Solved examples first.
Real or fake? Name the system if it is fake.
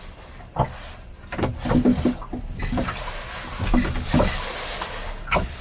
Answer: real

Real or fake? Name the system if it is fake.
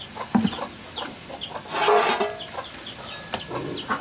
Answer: real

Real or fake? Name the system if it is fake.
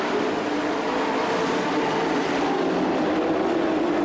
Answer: real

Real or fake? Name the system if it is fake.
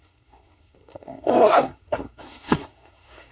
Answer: fake, codec, SNAC